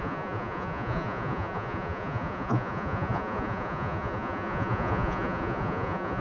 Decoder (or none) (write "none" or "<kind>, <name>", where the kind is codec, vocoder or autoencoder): vocoder, Vocos